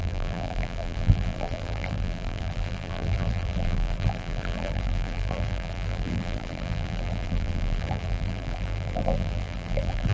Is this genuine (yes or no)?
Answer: no